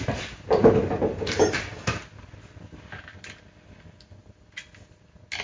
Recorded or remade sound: recorded